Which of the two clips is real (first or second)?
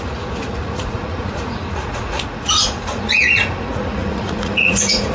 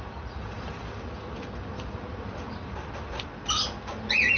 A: second